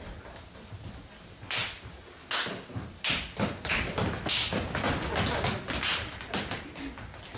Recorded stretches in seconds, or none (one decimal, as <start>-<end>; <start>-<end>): 0.0-7.4